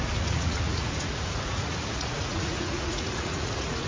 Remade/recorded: remade